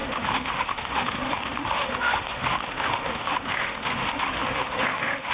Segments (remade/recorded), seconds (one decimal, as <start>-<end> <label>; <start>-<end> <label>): 0.0-5.3 remade